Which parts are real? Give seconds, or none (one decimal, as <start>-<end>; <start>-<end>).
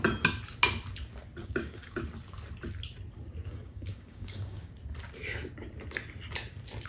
0.0-1.4; 2.0-3.4; 4.7-6.9